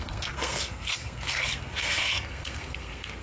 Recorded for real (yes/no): no